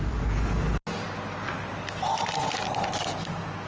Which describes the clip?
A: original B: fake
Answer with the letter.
A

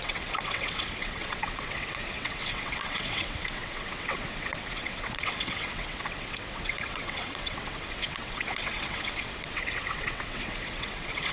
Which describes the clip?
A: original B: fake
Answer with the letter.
B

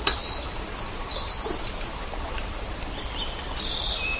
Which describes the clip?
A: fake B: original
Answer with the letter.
B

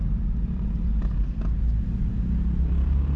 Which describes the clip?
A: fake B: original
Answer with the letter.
A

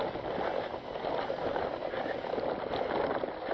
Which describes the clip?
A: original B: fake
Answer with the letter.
A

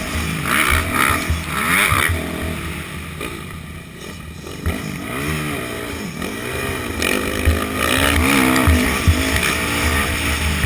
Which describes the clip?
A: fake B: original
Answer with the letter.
B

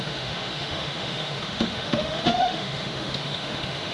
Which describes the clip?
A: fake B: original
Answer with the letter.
A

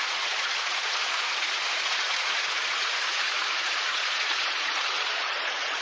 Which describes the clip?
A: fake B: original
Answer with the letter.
A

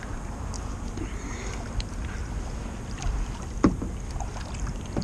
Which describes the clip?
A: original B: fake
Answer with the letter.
A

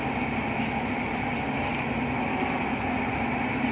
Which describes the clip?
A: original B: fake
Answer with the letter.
A